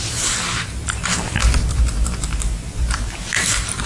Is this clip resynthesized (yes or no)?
yes